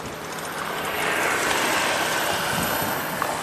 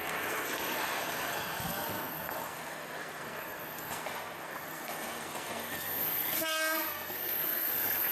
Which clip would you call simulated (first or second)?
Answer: second